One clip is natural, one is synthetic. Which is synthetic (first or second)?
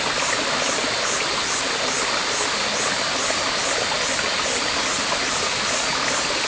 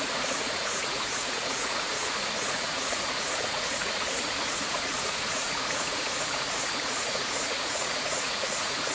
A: second